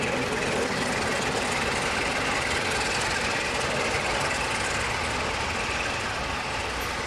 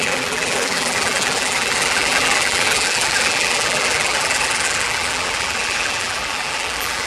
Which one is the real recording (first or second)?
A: first